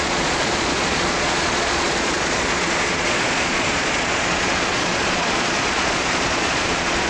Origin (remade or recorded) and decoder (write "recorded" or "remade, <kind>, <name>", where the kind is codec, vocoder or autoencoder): remade, vocoder, Vocos